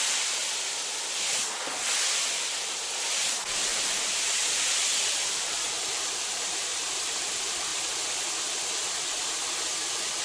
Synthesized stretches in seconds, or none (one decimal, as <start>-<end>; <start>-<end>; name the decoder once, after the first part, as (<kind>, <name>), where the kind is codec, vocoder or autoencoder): 0.0-0.4 (vocoder, BigVGAN v2); 3.3-3.7; 5.3-7.7